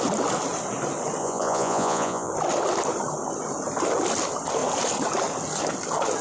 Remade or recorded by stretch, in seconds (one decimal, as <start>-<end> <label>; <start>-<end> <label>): 0.0-1.2 recorded; 1.2-2.3 remade; 2.3-6.2 recorded